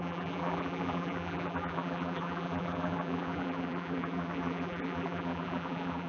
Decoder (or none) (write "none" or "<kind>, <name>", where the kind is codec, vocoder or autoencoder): vocoder, BigVGAN v2